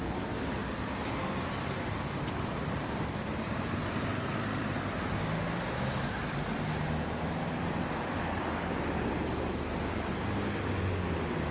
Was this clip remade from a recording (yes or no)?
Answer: no